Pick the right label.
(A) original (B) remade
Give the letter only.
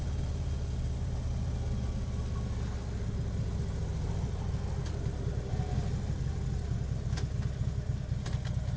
A